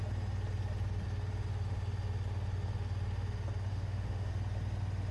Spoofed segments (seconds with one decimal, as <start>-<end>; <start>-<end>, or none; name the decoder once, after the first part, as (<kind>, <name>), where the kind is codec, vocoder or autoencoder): 3.7-4.3 (autoencoder, DAC-VAE)

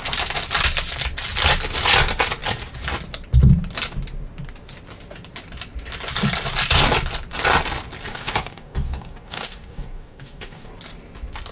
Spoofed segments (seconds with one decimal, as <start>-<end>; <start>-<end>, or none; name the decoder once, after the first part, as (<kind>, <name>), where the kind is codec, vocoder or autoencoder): 8.1-10.7 (codec, DAC)

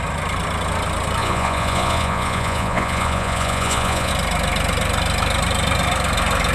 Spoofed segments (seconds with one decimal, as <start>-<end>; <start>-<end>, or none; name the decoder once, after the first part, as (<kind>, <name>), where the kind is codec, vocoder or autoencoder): 1.2-4.1 (vocoder, Vocos)

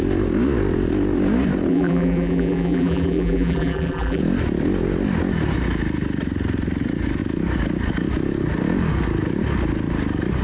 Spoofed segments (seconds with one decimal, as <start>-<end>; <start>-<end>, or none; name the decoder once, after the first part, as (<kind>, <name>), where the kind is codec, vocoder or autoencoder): 1.7-4.2 (vocoder, BigVGAN v2)

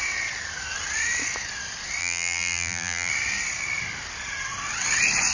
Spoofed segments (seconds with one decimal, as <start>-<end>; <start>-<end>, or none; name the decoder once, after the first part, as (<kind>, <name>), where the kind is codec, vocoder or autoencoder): 2.0-3.1 (vocoder, BigVGAN v2)

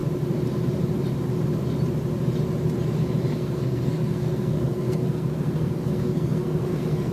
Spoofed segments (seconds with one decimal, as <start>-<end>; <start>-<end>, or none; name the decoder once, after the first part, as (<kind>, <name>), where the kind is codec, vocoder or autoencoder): 3.3-7.1 (codec, SNAC)

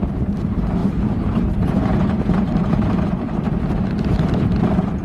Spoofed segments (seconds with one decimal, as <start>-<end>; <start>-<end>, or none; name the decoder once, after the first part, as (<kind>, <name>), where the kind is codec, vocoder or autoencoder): 0.0-5.0 (vocoder, BigVGAN v2)

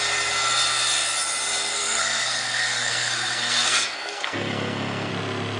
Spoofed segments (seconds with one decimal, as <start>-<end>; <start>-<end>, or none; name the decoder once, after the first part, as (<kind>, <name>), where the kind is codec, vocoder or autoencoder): 1.7-5.1 (codec, SNAC)